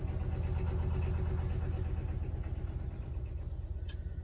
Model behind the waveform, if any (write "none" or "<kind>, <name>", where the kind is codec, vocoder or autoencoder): none